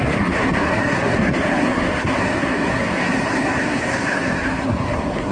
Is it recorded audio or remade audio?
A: remade